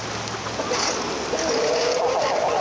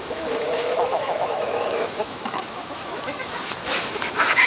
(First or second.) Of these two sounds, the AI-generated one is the second